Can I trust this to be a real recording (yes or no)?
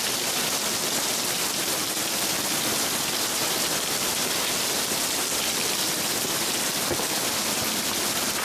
yes